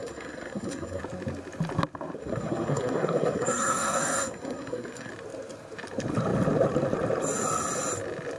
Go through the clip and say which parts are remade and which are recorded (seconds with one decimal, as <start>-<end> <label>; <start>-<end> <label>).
0.0-1.0 remade; 1.0-2.2 recorded; 2.2-5.1 remade; 5.1-8.4 recorded